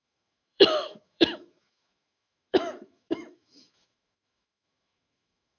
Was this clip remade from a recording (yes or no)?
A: yes